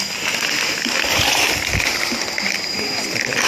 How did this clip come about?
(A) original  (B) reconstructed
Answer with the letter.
A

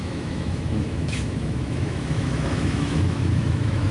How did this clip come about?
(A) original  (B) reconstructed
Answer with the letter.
B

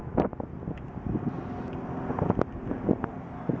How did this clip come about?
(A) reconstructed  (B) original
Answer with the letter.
B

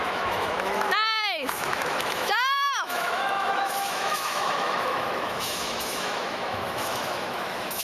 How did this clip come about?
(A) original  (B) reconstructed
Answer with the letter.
B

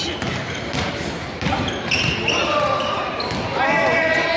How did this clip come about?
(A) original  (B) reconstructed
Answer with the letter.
A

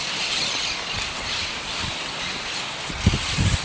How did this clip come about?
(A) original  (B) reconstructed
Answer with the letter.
A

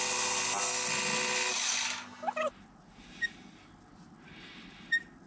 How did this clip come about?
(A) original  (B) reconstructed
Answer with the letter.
A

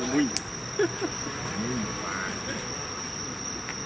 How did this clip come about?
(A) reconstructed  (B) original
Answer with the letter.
B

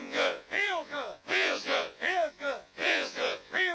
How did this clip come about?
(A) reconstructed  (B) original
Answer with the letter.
A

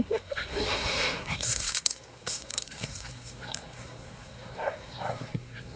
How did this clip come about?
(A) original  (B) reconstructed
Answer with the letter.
B